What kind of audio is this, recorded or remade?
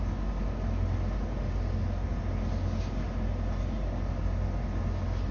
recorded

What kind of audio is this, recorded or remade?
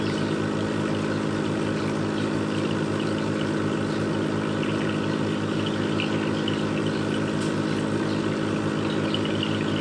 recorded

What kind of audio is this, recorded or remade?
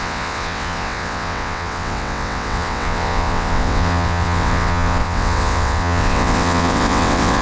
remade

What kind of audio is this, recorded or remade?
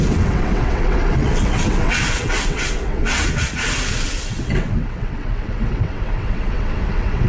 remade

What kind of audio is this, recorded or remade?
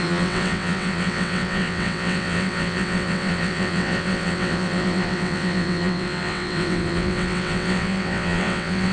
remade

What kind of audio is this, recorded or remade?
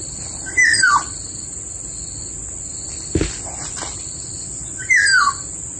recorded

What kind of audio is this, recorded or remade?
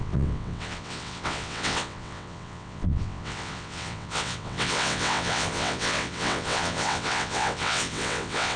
remade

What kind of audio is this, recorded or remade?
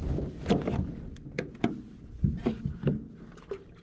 recorded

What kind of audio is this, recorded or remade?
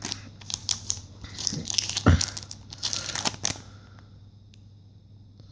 recorded